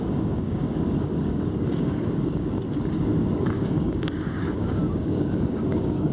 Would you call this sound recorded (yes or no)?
no